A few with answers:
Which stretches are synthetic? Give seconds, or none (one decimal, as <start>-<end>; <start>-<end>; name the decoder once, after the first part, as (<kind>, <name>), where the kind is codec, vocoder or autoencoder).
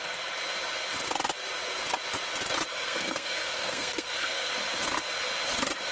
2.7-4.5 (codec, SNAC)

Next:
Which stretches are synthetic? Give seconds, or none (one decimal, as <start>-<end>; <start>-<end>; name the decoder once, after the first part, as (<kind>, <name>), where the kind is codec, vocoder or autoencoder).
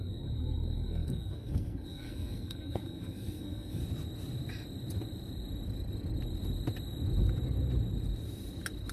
0.0-3.8 (codec, SNAC)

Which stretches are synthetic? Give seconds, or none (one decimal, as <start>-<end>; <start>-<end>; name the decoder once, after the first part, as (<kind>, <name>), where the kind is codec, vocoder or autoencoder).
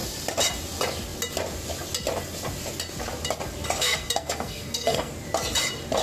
3.8-5.1 (codec, SNAC)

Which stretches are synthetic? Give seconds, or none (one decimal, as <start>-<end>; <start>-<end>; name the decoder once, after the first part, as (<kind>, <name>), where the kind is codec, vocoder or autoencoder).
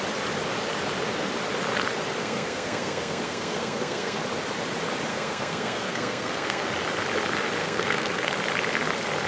2.2-4.2 (codec, SNAC); 5.1-6.7; 7.6-8.3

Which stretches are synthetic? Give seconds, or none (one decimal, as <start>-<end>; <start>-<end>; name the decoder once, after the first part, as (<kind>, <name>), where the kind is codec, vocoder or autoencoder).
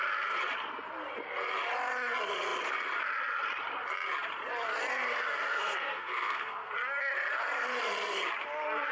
5.5-6.7 (codec, SNAC)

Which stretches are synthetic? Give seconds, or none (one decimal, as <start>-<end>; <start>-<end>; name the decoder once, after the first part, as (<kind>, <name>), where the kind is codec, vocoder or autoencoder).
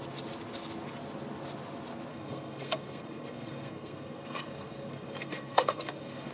2.1-6.3 (codec, SNAC)